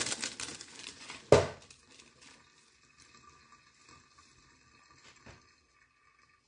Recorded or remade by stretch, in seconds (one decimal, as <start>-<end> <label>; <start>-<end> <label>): 0.0-0.5 recorded; 0.5-1.1 remade; 1.1-6.5 recorded